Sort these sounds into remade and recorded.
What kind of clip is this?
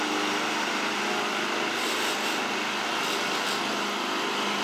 recorded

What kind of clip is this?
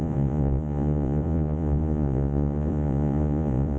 remade